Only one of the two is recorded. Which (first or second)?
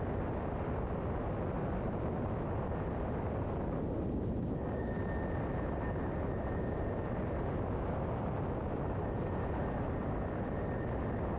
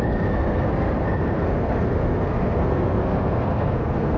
first